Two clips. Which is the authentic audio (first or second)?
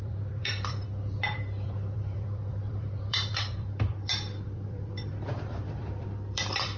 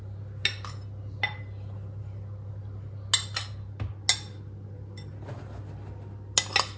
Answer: second